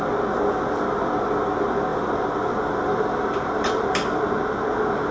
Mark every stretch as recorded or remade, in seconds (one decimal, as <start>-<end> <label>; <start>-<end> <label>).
0.0-1.9 recorded; 1.9-4.2 remade; 4.2-5.1 recorded